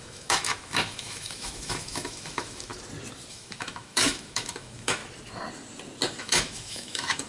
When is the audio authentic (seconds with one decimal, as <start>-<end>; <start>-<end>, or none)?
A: 2.7-3.3; 5.0-6.2